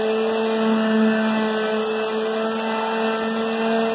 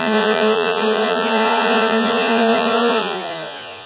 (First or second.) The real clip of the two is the first